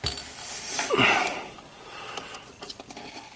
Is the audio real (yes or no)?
yes